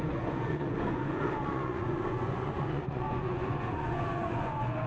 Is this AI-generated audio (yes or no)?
yes